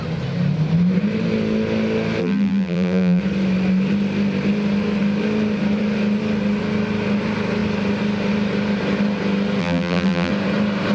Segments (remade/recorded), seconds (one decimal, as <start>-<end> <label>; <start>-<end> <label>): 0.0-2.2 recorded; 2.2-3.2 remade; 3.2-9.6 recorded; 9.6-10.3 remade; 10.3-10.9 recorded